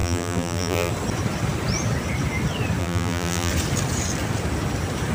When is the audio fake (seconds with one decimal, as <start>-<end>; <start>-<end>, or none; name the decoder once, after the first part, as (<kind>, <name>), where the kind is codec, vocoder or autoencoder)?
0.0-0.9 (vocoder, BigVGAN v2); 2.8-3.5